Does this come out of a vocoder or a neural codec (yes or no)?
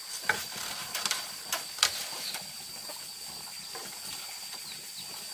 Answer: no